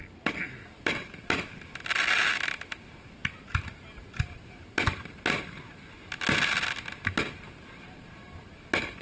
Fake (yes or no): no